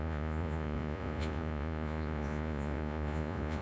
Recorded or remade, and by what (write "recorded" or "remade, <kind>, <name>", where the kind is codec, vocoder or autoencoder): remade, vocoder, Vocos